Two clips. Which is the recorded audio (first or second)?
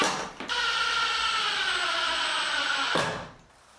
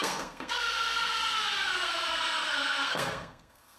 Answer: first